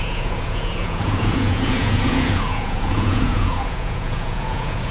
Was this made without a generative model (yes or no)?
no